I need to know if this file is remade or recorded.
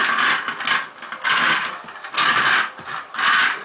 recorded